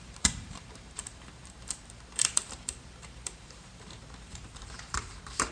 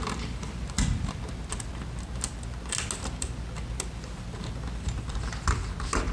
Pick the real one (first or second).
second